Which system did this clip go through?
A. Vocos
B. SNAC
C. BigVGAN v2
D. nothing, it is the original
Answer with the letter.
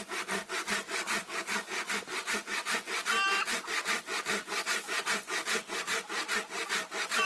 C